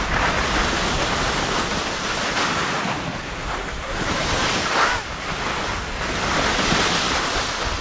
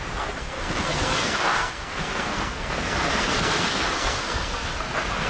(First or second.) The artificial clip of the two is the second